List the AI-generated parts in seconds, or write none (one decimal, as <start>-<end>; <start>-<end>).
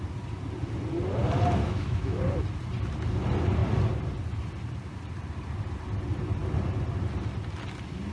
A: 1.6-2.2